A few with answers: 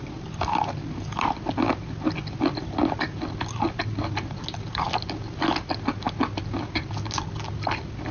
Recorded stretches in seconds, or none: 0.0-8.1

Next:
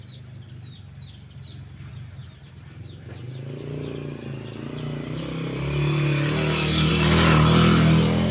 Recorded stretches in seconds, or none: 0.0-8.3

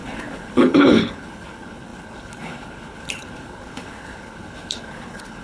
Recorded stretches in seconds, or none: none

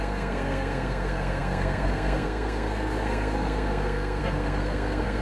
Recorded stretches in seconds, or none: none